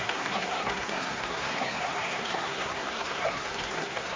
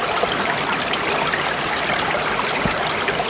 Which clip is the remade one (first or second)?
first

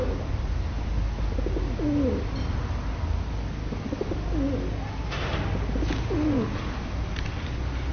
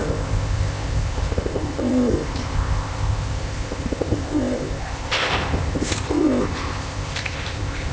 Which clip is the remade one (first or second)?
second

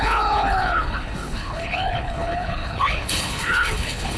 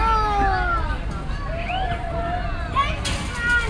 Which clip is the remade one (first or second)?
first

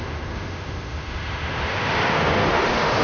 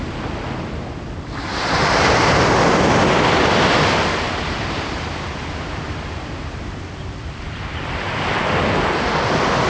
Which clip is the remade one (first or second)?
first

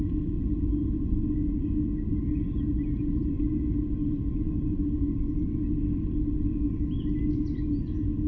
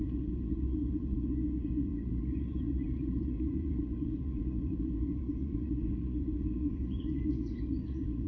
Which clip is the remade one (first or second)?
second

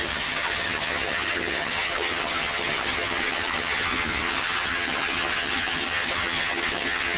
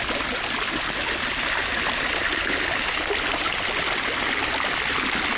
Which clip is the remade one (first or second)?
first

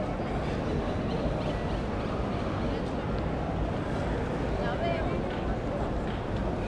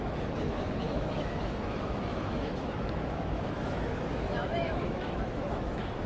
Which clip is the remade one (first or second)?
second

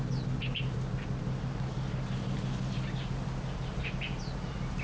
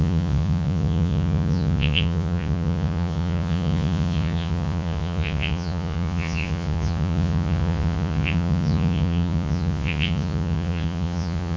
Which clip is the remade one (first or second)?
second